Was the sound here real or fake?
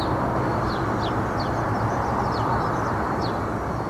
real